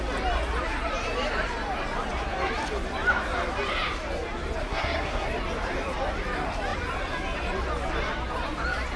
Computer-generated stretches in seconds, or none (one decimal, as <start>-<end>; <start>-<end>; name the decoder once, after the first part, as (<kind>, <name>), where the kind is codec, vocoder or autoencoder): 4.6-5.3 (codec, SNAC)